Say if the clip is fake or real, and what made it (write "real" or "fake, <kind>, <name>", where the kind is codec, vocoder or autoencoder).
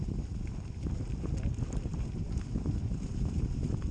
real